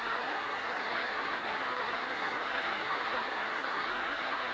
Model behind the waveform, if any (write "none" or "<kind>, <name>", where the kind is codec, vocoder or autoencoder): codec, SNAC